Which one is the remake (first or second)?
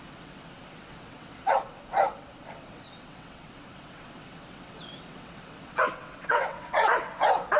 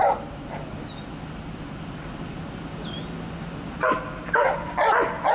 first